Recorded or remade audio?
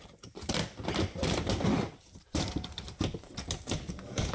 recorded